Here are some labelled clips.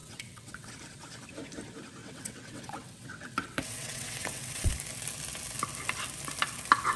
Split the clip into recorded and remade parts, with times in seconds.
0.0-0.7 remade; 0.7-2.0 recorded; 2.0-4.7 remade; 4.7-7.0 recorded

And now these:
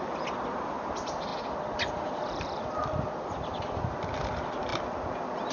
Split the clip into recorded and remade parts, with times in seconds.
0.0-5.5 recorded

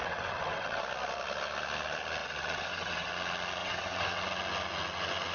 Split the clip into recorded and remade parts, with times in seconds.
0.0-0.8 remade; 0.8-2.2 recorded; 2.2-3.1 remade; 3.1-3.6 recorded; 3.6-4.2 remade; 4.2-5.3 recorded

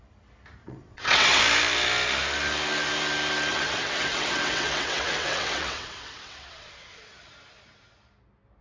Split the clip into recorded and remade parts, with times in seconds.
0.0-0.6 recorded; 0.6-1.4 remade; 1.4-3.5 recorded; 3.5-7.0 remade; 7.0-8.6 recorded